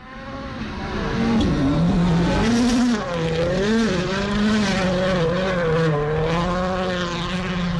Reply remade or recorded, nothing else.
recorded